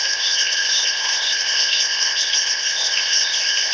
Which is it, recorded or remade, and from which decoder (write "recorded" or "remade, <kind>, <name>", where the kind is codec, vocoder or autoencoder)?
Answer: remade, codec, ZipCodec